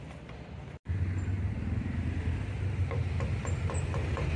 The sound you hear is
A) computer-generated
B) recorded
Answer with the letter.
B